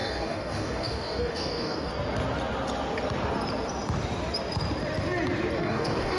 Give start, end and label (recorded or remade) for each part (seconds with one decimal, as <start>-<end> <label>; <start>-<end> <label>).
0.0-1.9 remade; 1.9-5.6 recorded; 5.6-6.2 remade